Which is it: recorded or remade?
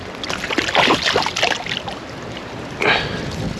recorded